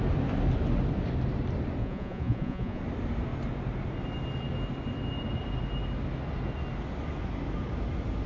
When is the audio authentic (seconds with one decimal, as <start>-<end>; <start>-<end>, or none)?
0.0-1.8; 2.8-8.3